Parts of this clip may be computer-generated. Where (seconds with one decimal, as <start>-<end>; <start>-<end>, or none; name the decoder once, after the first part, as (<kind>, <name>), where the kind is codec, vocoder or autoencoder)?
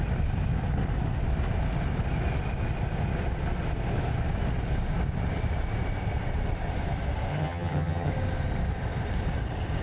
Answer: 7.3-8.1 (vocoder, HiFi-GAN)